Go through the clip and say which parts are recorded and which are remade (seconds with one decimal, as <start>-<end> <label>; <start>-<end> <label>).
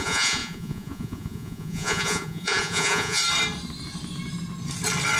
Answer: 0.0-3.2 remade; 3.2-5.2 recorded